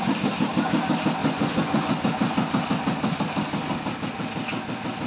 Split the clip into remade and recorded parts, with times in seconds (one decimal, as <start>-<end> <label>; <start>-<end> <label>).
0.0-1.2 recorded; 1.2-1.9 remade; 1.9-5.1 recorded